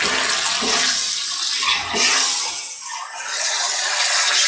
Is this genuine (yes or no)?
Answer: yes